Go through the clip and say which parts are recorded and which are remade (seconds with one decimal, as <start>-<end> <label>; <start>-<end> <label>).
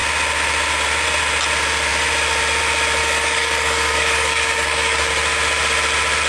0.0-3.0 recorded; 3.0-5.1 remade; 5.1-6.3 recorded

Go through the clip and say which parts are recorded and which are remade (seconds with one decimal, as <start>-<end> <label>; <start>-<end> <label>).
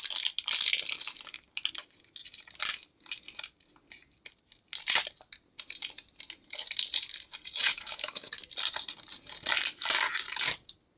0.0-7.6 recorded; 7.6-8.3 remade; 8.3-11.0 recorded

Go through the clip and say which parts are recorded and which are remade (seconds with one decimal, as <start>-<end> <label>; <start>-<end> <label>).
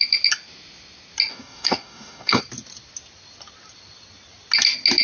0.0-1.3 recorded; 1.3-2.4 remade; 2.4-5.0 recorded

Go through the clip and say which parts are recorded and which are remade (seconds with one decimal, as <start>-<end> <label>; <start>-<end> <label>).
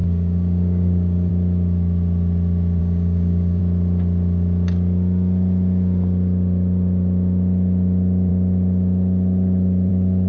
0.0-1.3 remade; 1.3-2.8 recorded; 2.8-3.6 remade; 3.6-10.3 recorded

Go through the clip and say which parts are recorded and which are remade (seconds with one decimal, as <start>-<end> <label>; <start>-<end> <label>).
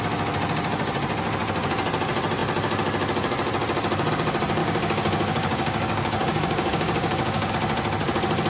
0.0-4.6 recorded; 4.6-7.5 remade; 7.5-8.5 recorded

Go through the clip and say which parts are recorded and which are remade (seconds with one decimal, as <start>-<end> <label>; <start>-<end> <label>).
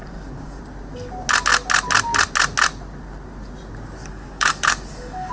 0.0-0.6 remade; 0.6-4.0 recorded; 4.0-5.3 remade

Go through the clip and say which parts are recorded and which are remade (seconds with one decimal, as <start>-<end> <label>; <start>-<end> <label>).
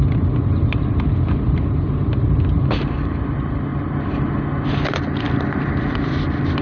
0.0-6.6 recorded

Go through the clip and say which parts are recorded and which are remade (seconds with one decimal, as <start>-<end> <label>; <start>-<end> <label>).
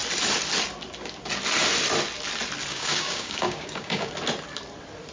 0.0-2.7 recorded; 2.7-4.1 remade; 4.1-5.1 recorded